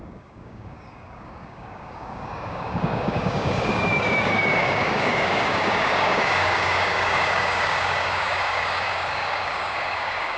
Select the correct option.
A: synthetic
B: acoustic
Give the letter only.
A